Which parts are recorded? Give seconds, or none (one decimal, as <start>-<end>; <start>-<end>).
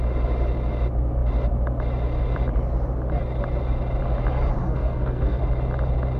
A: 0.0-4.6; 5.4-6.2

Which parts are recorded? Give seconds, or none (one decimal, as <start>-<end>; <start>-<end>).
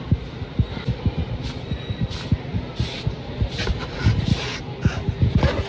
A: 0.0-5.7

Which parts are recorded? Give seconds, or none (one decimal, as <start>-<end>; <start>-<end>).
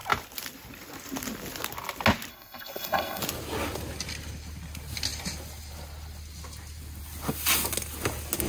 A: 0.0-2.3; 3.2-8.5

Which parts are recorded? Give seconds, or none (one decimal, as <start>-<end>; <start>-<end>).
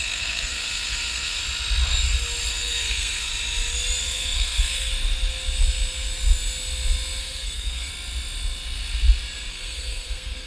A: 1.4-2.5; 3.3-4.0; 4.9-7.2; 7.9-9.5